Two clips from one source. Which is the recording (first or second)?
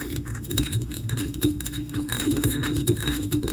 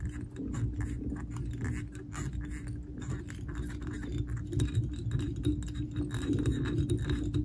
second